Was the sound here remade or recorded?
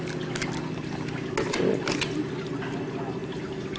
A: recorded